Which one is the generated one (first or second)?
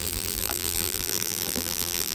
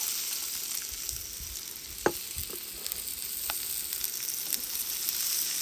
first